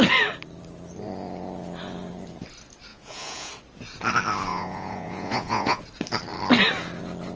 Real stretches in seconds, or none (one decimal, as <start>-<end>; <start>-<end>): 0.0-2.9; 3.5-4.5; 5.8-7.4